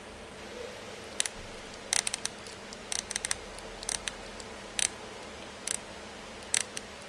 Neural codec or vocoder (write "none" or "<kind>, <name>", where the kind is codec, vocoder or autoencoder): none